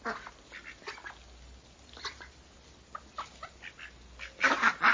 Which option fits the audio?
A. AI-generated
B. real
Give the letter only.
B